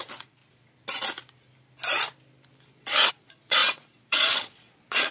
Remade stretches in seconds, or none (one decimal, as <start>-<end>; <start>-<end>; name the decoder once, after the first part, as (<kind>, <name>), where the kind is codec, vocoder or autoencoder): 0.0-0.4 (vocoder, Vocos); 3.1-5.1